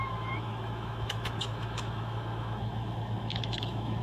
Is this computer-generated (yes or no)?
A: yes